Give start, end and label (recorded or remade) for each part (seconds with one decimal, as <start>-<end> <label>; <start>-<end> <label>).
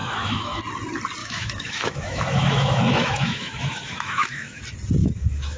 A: 0.0-0.6 remade; 0.6-1.2 recorded; 1.2-4.6 remade; 4.6-5.0 recorded; 5.0-5.6 remade